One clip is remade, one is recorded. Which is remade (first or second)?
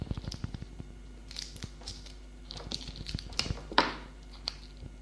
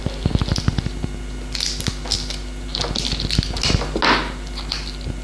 first